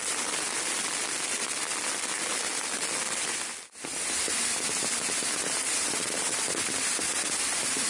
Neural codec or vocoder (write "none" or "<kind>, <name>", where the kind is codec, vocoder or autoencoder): none